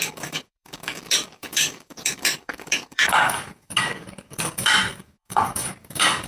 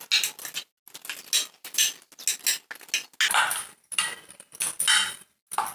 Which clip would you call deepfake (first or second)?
first